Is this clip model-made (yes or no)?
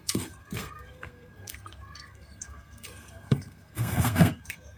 yes